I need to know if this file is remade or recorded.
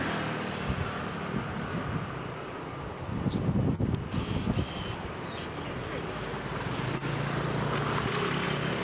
recorded